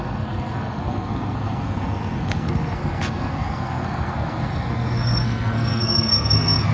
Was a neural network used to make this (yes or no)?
yes